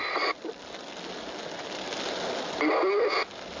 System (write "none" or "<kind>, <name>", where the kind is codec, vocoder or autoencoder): none